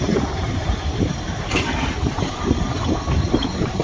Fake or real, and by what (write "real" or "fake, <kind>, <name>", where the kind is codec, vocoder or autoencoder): fake, vocoder, BigVGAN v2